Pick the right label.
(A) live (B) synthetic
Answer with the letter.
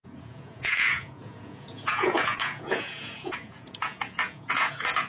B